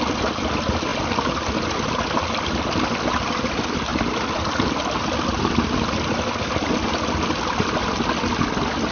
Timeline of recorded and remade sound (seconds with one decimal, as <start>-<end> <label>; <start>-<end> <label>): 0.0-8.9 recorded